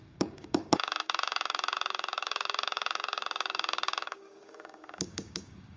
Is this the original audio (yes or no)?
no